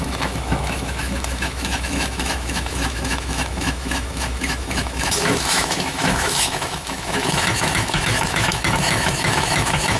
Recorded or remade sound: remade